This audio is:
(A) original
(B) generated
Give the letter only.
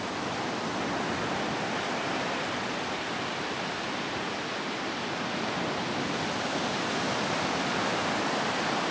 A